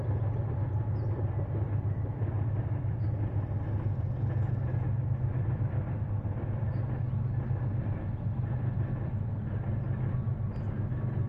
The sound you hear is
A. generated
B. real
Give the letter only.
B